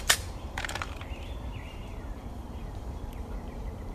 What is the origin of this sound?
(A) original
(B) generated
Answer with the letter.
B